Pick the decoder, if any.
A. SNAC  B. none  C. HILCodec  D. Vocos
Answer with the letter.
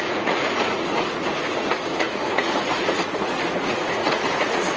D